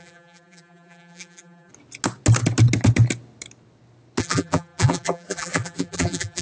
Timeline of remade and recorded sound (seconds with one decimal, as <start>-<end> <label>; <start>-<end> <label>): 0.0-1.7 remade; 1.7-4.2 recorded; 4.2-6.4 remade

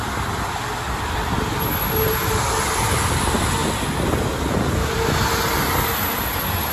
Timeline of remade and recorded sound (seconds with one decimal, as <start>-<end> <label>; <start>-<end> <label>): 0.0-6.7 recorded

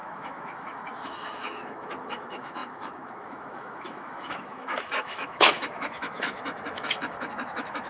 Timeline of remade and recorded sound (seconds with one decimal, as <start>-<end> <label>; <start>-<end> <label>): 0.0-7.9 remade

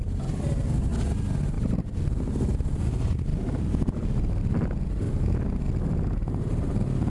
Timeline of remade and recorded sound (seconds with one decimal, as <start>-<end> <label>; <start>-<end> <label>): 0.0-7.1 recorded

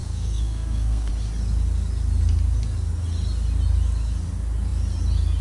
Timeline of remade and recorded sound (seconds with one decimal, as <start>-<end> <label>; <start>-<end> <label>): 0.0-1.1 remade; 1.1-5.4 recorded